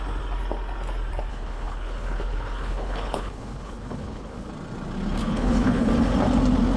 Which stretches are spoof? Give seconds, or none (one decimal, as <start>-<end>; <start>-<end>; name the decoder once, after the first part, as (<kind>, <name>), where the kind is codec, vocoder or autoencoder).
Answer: 1.3-4.5 (codec, HILCodec); 5.2-5.9